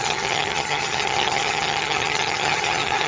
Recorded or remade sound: remade